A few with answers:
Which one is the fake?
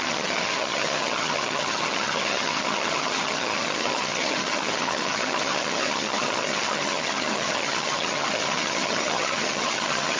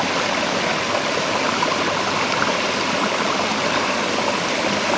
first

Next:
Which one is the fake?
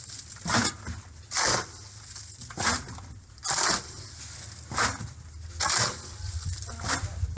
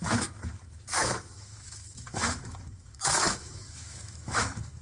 second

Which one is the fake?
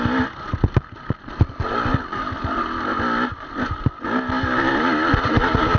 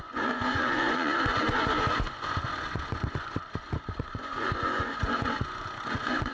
second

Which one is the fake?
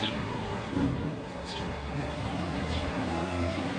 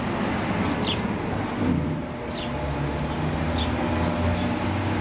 first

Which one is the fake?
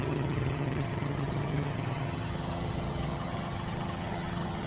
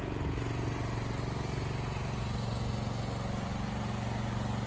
first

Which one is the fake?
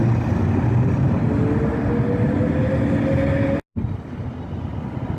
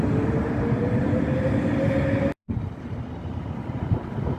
second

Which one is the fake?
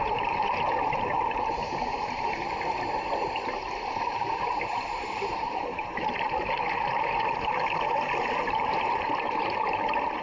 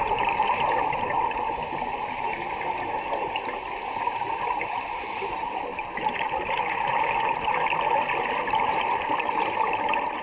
first